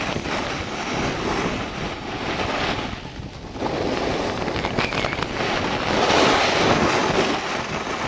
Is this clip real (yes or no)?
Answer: yes